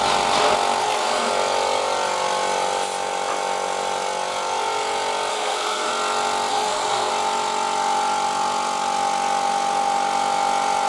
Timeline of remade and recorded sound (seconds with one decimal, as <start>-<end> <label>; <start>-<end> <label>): 0.0-0.8 recorded; 0.8-1.3 remade; 1.3-5.3 recorded; 5.3-5.9 remade; 5.9-6.5 recorded; 6.5-7.1 remade; 7.1-10.9 recorded